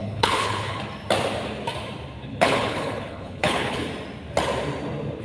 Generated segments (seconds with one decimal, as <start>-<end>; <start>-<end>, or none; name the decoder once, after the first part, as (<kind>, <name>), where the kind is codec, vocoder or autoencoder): 0.0-0.8 (codec, HILCodec); 2.3-3.9

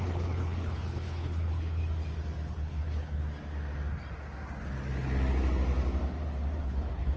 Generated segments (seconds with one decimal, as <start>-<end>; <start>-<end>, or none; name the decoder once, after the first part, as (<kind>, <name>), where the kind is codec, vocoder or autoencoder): 0.0-1.8 (codec, HILCodec); 2.5-3.2; 6.6-7.2

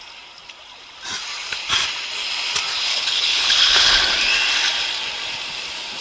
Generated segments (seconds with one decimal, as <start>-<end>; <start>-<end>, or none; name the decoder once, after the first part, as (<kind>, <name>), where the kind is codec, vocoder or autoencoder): 2.9-4.0 (codec, HILCodec)